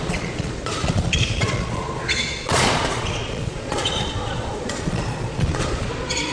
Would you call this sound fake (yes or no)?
yes